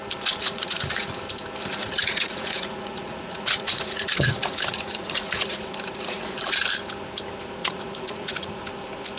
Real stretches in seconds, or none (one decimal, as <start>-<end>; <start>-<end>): 0.0-0.4; 1.1-1.7; 6.6-7.6; 8.6-9.2